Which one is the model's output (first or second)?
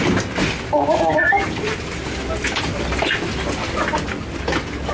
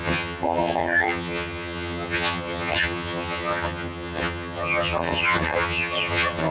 second